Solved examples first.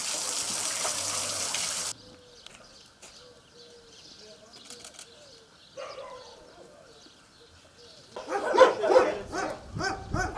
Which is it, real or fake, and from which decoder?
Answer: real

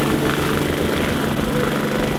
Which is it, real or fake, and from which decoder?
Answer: real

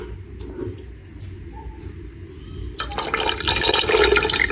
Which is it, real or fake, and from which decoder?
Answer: real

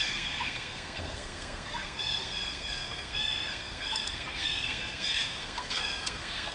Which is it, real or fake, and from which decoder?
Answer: fake, codec, SNAC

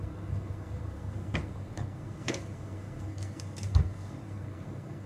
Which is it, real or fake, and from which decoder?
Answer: fake, codec, SNAC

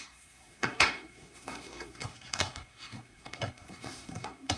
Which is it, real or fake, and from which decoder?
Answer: fake, codec, SNAC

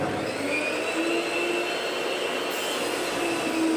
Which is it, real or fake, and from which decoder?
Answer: real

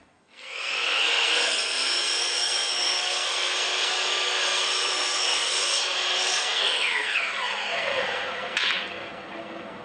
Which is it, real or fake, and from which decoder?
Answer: fake, codec, SNAC